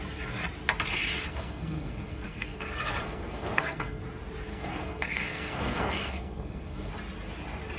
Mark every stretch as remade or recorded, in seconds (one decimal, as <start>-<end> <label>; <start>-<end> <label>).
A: 0.0-1.3 recorded; 1.3-4.0 remade; 4.0-4.5 recorded; 4.5-6.9 remade; 6.9-7.8 recorded